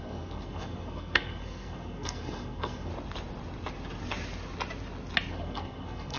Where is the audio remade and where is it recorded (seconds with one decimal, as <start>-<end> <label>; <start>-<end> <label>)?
0.0-2.9 remade; 2.9-5.3 recorded; 5.3-6.2 remade